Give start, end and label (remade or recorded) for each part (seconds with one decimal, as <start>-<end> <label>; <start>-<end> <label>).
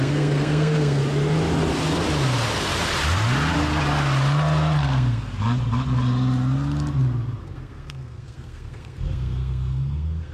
0.0-1.0 remade; 1.0-4.8 recorded; 4.8-5.3 remade; 5.3-7.4 recorded; 7.4-10.3 remade